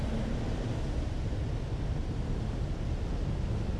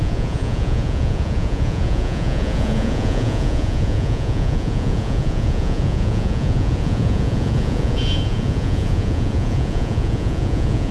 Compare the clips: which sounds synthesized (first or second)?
second